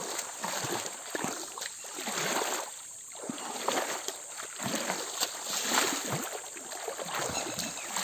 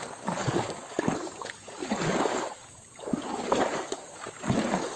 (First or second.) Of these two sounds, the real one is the first